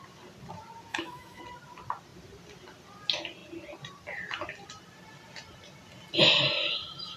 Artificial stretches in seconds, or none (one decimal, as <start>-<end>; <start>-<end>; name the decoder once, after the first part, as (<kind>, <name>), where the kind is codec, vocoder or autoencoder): 0.9-1.4 (autoencoder, DAC-VAE)